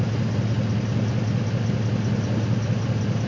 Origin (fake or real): real